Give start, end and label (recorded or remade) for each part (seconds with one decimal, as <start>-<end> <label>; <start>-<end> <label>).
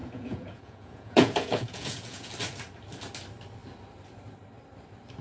0.0-2.3 remade; 2.3-5.2 recorded